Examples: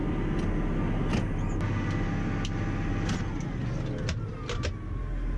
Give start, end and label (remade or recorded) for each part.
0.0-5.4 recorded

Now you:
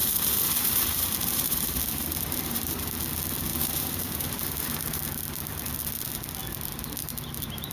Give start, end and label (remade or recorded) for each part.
0.0-2.9 remade; 2.9-3.5 recorded; 3.5-5.0 remade; 5.0-7.7 recorded

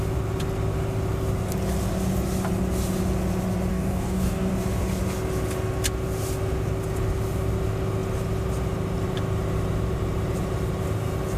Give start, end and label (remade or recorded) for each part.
0.0-3.7 recorded; 3.7-4.5 remade; 4.5-11.4 recorded

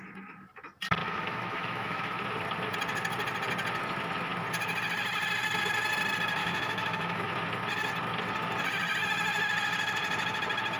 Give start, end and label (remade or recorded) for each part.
0.0-1.0 recorded; 1.0-2.2 remade; 2.2-6.4 recorded; 6.4-7.3 remade; 7.3-10.8 recorded

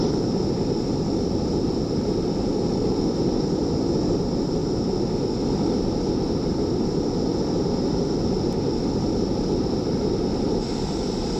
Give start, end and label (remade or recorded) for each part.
0.0-4.6 remade; 4.6-6.8 recorded; 6.8-11.4 remade

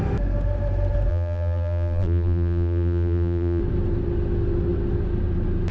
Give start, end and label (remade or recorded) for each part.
0.0-1.1 recorded; 1.1-3.6 remade; 3.6-5.7 recorded